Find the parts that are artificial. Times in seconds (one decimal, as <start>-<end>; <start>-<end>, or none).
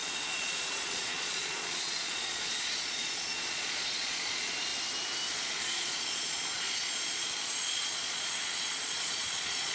0.0-4.7; 5.3-9.7